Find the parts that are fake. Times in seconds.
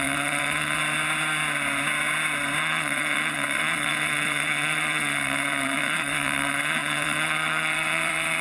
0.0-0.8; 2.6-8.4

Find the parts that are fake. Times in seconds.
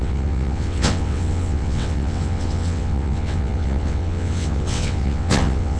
0.0-5.8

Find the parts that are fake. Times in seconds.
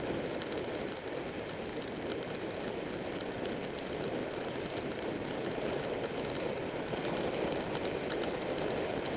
none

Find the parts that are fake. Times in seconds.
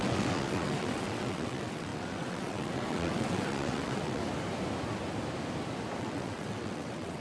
0.0-4.2; 6.0-7.2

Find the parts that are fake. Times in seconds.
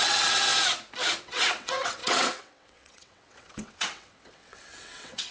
0.0-0.5; 1.2-5.3